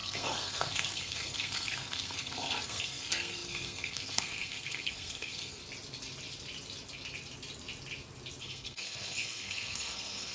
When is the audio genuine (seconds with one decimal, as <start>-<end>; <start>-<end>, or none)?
5.6-8.4

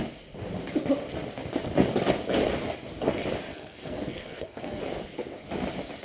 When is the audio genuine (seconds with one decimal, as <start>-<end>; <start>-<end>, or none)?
0.0-3.5; 4.8-6.0

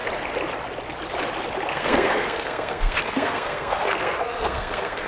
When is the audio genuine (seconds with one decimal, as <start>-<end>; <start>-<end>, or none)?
0.0-1.7

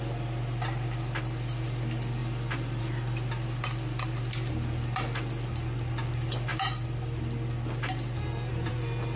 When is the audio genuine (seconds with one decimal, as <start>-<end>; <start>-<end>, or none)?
0.0-9.2